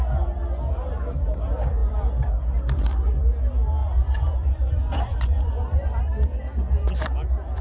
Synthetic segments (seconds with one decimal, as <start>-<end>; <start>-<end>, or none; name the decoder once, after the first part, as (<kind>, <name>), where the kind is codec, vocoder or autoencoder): 3.8-6.1 (vocoder, Vocos)